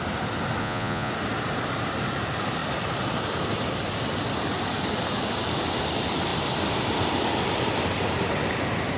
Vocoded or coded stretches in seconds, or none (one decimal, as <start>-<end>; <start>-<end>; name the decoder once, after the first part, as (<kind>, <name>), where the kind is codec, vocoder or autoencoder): 0.6-1.1 (vocoder, Vocos)